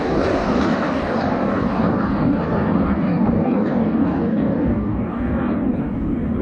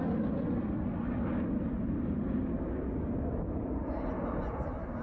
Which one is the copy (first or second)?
first